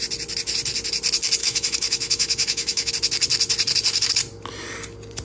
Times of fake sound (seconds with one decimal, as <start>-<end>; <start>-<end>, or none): 1.4-2.9